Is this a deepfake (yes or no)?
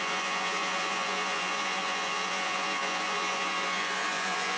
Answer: yes